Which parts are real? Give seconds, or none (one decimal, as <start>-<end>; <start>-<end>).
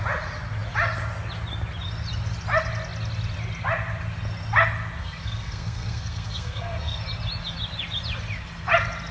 0.0-5.0; 7.0-9.1